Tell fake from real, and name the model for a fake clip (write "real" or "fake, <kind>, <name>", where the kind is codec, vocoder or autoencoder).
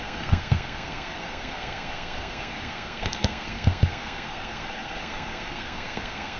fake, codec, SNAC